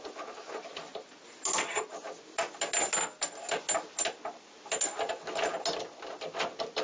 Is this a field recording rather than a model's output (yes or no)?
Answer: yes